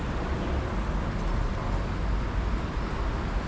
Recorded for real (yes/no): yes